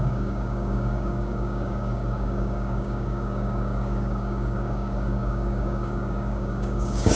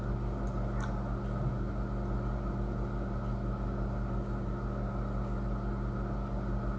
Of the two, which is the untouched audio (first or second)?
second